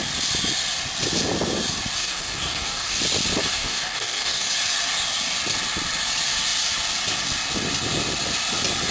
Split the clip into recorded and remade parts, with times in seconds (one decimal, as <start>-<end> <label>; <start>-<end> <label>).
0.0-2.0 recorded; 2.0-3.0 remade; 3.0-3.4 recorded; 3.4-4.5 remade; 4.5-8.9 recorded